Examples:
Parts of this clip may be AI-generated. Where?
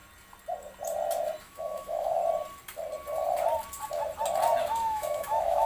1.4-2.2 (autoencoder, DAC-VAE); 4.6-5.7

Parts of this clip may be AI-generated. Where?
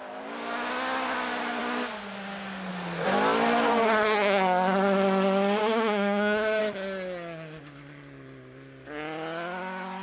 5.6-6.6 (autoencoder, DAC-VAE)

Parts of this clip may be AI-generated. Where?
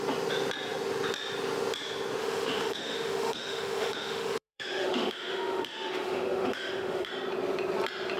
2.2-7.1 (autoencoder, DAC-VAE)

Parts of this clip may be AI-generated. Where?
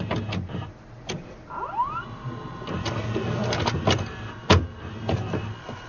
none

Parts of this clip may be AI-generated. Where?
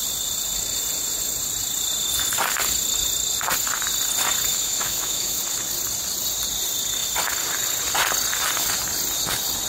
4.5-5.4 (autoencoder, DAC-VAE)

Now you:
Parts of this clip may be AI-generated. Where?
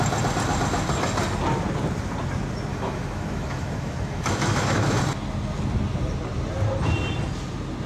2.7-5.0 (autoencoder, DAC-VAE)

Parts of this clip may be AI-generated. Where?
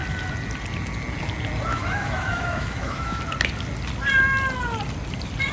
1.7-3.2 (autoencoder, DAC-VAE)